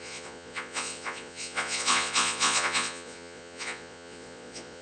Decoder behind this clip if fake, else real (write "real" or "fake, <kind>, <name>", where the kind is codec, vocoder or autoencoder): fake, vocoder, Vocos